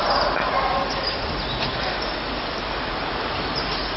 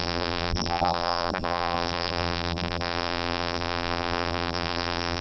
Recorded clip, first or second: first